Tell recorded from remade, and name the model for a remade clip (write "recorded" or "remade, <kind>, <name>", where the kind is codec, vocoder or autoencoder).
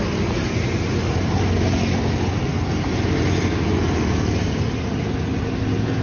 recorded